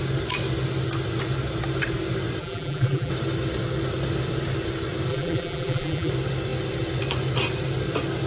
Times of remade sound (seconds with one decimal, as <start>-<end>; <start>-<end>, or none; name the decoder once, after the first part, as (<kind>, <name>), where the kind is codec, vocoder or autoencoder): 2.4-3.1 (vocoder, BigVGAN v2); 5.1-6.1